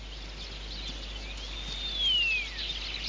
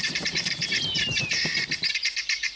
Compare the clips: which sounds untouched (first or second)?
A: first